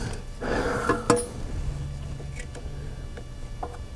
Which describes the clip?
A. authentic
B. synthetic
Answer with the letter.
A